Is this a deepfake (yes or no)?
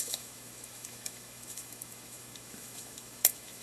yes